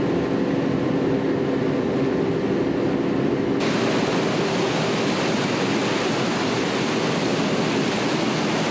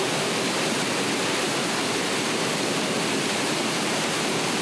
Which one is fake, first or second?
second